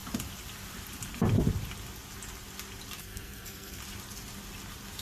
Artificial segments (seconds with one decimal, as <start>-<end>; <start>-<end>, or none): 3.0-3.8